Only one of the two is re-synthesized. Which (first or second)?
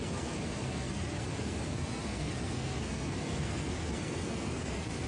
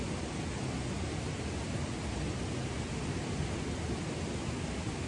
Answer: first